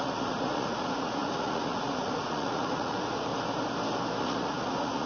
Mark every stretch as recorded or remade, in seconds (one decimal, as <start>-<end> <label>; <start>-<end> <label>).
0.0-3.3 remade; 3.3-4.2 recorded; 4.2-5.1 remade